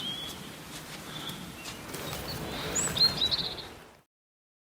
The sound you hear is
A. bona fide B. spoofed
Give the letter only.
A